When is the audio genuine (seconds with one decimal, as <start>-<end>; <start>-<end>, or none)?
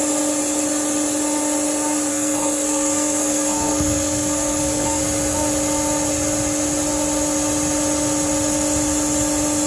0.0-2.1; 5.0-9.7